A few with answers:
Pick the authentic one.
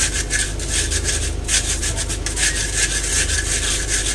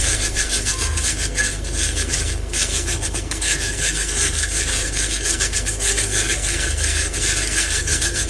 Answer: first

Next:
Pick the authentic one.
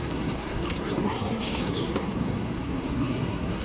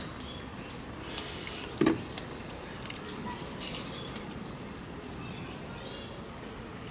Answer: second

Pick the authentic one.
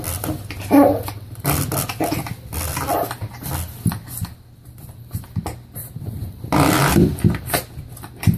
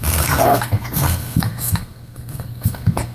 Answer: first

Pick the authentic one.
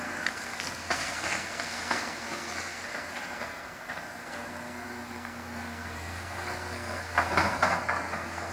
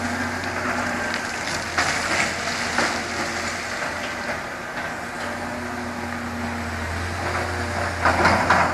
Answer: second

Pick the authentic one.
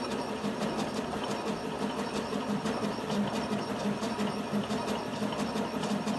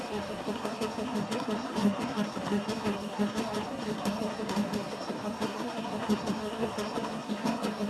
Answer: first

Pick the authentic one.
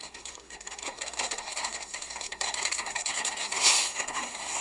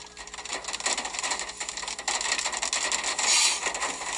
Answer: second